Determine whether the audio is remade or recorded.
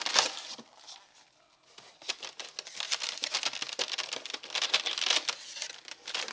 recorded